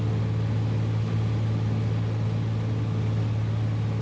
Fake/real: real